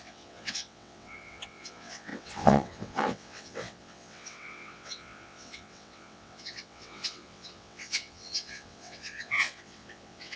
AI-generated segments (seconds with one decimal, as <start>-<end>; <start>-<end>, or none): 0.0-10.4